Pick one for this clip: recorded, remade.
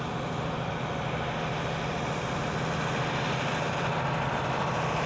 recorded